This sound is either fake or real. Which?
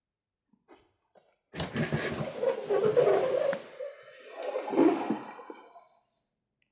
real